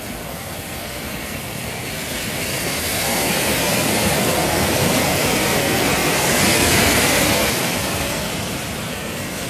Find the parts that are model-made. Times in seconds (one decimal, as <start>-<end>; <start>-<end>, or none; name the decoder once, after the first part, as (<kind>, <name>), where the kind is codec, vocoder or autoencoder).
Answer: 0.0-8.3 (codec, SNAC); 8.9-9.5